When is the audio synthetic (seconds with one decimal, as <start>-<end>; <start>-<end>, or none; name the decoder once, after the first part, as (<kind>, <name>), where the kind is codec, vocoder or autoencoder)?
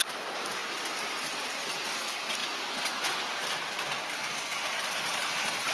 2.4-3.2 (vocoder, Vocos); 4.2-4.9